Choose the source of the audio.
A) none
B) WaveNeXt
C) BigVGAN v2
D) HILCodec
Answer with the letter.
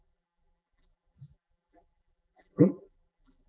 C